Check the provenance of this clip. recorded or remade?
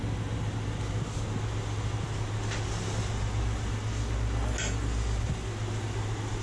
recorded